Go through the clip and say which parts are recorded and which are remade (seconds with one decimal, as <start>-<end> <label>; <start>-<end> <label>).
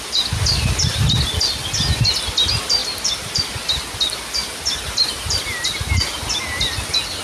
0.0-7.2 recorded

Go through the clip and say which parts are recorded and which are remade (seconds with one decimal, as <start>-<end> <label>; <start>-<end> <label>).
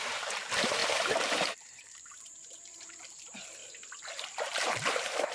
0.0-3.6 remade; 3.6-4.2 recorded; 4.2-5.3 remade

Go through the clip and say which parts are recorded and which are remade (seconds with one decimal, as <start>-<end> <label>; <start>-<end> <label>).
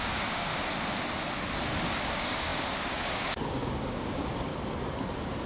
0.0-0.5 remade; 0.5-2.1 recorded; 2.1-4.5 remade; 4.5-5.5 recorded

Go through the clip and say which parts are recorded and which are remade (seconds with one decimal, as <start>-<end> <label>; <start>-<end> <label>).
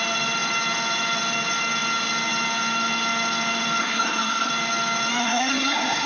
0.0-3.8 recorded; 3.8-4.5 remade; 4.5-5.2 recorded; 5.2-6.1 remade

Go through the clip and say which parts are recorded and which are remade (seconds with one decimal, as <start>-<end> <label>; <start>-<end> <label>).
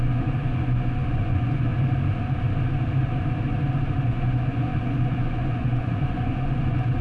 0.0-1.7 remade; 1.7-4.0 recorded; 4.0-7.0 remade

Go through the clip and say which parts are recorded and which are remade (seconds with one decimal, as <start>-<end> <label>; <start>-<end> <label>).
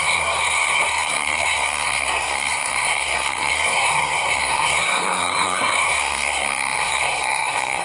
0.0-7.8 remade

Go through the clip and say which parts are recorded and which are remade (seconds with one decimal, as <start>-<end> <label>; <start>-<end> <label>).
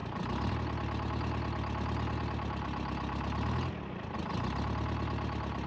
0.0-5.7 recorded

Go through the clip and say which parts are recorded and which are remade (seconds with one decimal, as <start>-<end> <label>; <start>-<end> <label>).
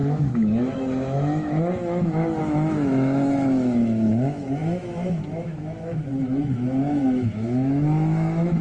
0.0-8.6 remade